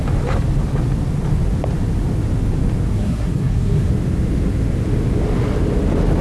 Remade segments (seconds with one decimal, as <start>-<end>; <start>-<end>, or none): 2.9-3.9